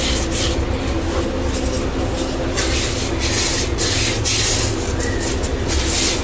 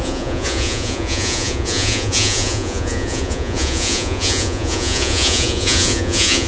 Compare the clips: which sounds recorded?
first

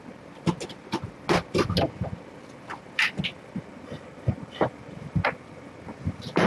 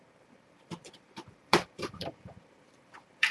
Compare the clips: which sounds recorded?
first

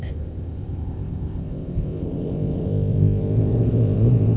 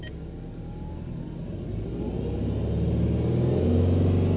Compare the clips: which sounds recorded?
second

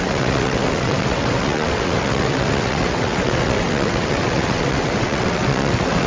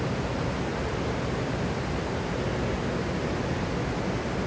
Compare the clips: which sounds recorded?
second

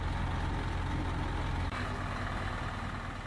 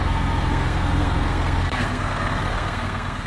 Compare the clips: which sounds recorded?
first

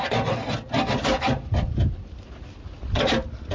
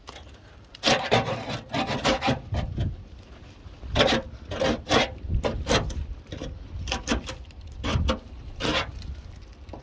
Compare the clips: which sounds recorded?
first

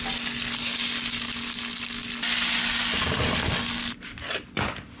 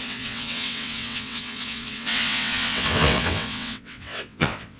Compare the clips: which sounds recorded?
first